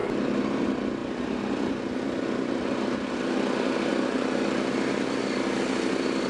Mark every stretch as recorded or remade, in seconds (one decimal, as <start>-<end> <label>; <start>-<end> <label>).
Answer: 0.0-6.3 recorded